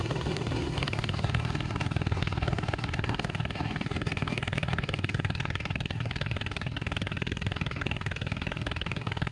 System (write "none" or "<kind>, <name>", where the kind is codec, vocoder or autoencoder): codec, SNAC